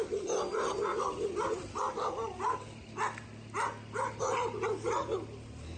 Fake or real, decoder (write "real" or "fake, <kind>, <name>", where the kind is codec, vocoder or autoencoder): real